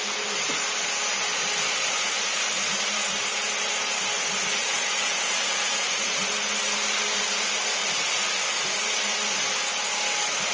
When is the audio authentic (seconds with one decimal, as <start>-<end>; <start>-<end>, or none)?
0.0-4.6; 6.3-10.5